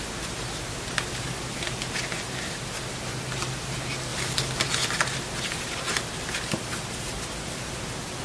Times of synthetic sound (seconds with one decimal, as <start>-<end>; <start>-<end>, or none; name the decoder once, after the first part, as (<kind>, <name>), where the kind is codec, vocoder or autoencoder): none